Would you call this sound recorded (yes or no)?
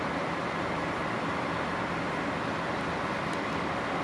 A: yes